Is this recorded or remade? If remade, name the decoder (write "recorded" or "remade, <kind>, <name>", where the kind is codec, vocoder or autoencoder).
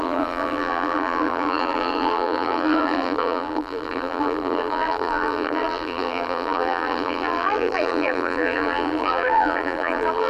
remade, vocoder, BigVGAN v2